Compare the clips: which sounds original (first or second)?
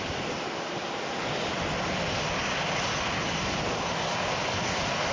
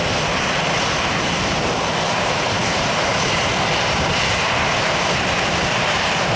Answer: first